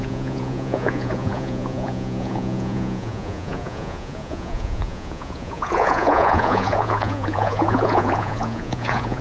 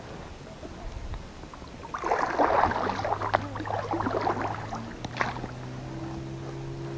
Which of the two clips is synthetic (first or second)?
first